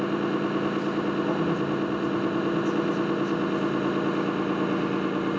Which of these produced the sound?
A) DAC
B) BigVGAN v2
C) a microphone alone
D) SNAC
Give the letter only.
C